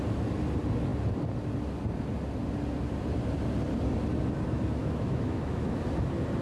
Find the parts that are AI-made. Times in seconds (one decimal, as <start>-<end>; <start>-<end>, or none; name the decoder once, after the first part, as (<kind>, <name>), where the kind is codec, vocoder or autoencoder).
4.8-5.8 (autoencoder, DAC-VAE)

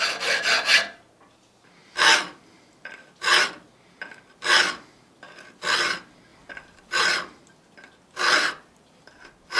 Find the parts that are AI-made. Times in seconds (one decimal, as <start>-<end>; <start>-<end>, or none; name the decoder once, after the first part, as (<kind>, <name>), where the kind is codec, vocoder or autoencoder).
none

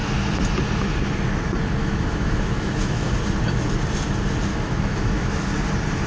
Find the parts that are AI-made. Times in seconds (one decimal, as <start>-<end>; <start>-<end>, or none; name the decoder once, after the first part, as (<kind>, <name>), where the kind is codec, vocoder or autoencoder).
1.8-3.1 (autoencoder, DAC-VAE); 4.5-5.5